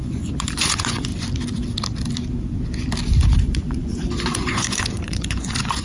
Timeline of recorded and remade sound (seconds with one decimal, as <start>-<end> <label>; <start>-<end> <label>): 0.0-1.1 remade; 1.1-3.4 recorded; 3.4-5.8 remade